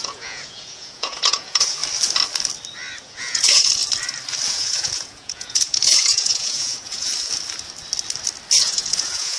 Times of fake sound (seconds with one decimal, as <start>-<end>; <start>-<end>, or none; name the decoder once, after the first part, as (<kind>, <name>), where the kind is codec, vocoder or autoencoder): 0.0-1.8 (vocoder, Vocos); 3.0-3.8; 4.5-7.1; 8.6-9.4